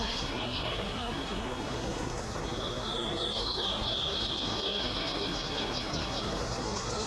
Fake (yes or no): yes